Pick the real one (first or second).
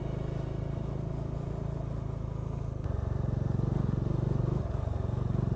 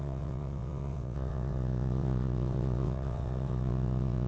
first